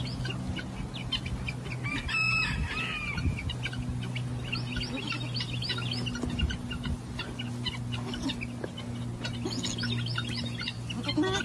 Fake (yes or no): no